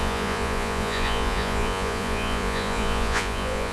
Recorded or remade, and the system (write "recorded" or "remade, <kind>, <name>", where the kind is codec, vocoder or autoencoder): remade, vocoder, Vocos